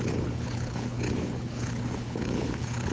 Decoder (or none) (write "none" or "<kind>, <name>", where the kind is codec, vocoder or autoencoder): codec, HILCodec